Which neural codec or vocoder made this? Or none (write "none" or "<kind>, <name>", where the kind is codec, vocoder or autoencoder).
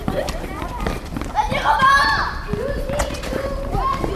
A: none